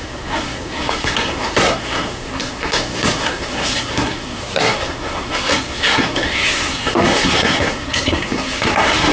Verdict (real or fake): fake